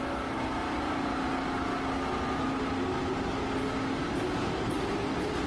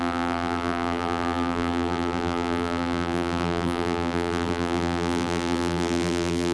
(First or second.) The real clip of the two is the first